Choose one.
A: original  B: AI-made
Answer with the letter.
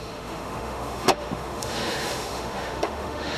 B